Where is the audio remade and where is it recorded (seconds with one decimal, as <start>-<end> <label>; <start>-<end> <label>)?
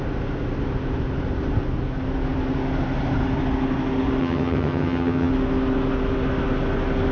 0.0-4.2 recorded; 4.2-5.3 remade; 5.3-7.1 recorded